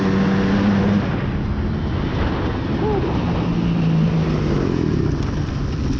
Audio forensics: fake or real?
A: real